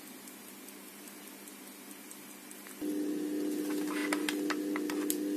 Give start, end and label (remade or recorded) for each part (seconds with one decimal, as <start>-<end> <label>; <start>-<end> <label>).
0.0-5.4 recorded